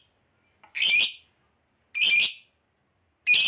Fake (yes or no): no